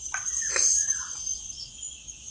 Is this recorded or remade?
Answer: remade